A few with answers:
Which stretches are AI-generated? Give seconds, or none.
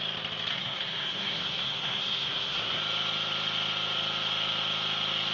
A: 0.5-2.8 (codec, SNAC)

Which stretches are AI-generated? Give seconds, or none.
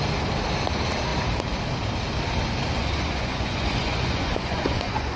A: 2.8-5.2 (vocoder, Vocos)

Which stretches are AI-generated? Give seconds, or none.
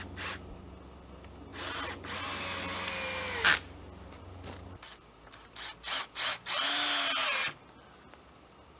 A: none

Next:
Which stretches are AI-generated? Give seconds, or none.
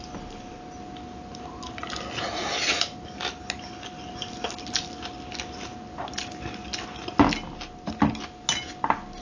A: none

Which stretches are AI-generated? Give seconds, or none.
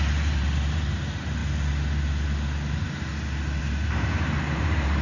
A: 0.0-1.4 (vocoder, BigVGAN v2); 3.6-5.0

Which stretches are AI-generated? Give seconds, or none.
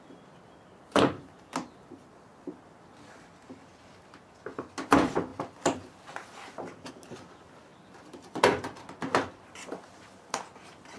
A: none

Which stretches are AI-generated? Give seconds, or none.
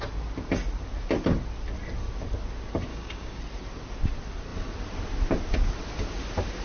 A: 2.9-3.4 (codec, DAC)